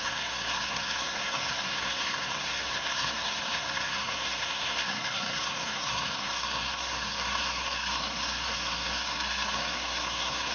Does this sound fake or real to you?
fake